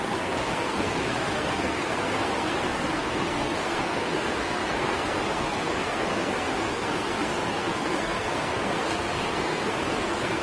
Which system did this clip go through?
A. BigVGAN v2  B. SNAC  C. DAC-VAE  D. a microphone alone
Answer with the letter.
B